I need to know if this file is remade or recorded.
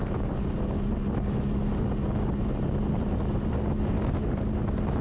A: recorded